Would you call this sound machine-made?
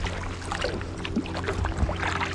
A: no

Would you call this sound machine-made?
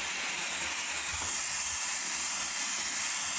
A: no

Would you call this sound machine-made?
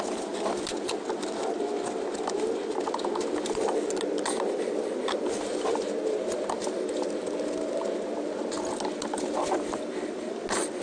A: no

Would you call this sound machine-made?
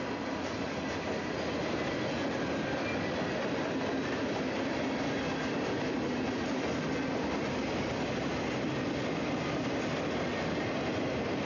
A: no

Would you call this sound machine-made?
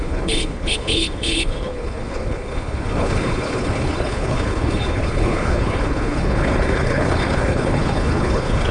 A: yes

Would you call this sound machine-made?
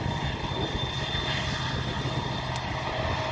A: no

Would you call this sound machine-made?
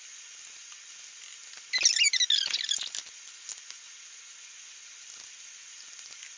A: no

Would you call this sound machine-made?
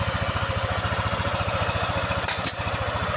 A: no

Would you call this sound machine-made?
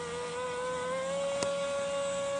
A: no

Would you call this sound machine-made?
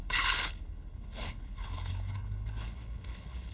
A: yes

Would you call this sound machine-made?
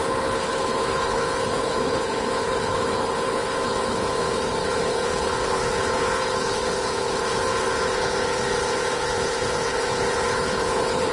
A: yes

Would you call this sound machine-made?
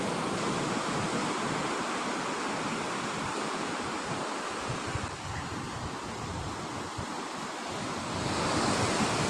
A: no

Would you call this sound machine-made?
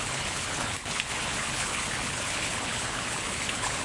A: yes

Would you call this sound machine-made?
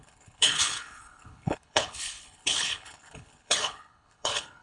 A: yes